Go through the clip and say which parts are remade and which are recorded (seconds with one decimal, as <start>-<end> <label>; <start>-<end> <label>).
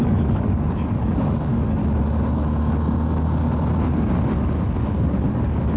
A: 0.0-1.8 remade; 1.8-5.3 recorded; 5.3-5.8 remade